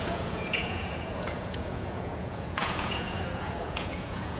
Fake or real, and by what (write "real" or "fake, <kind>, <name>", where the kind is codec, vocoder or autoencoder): fake, vocoder, Vocos